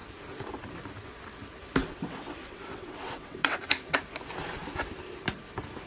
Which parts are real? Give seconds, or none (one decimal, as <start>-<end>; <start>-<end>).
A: 0.0-1.8; 3.6-5.9